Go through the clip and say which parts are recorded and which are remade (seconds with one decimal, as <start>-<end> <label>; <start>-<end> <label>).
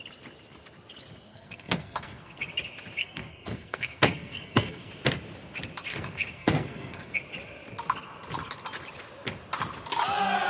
0.0-1.3 recorded; 1.3-2.4 remade; 2.4-3.0 recorded; 3.0-4.9 remade; 4.9-5.9 recorded; 5.9-7.2 remade; 7.2-10.5 recorded